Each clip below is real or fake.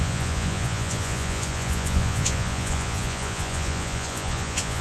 fake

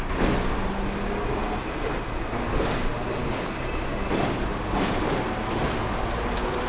real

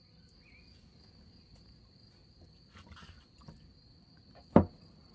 real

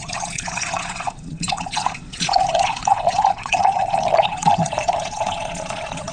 fake